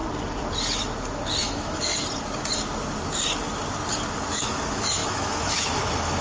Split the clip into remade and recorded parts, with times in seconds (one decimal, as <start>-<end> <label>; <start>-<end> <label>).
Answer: 0.0-1.4 recorded; 1.4-1.9 remade; 1.9-4.3 recorded; 4.3-6.2 remade